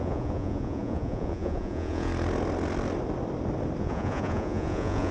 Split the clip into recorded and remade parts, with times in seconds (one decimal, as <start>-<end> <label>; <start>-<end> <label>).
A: 0.0-2.1 remade; 2.1-3.8 recorded; 3.8-5.1 remade